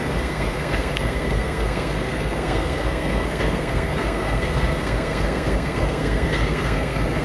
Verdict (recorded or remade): remade